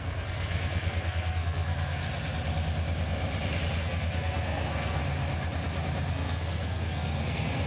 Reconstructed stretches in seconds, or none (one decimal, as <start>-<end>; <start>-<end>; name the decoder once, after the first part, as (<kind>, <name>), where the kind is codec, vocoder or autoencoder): 0.0-2.0 (codec, SNAC); 3.8-5.0; 6.1-7.7